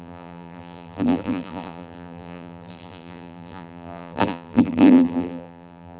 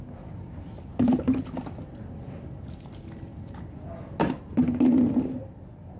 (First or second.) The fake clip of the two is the first